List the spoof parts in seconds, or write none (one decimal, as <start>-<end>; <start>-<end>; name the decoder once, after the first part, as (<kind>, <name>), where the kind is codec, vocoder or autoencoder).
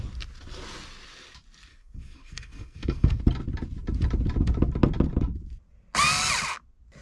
1.7-3.2 (codec, SNAC)